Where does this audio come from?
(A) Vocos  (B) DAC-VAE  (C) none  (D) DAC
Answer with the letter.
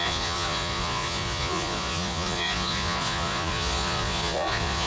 A